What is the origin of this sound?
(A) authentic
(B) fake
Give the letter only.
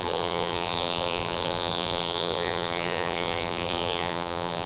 B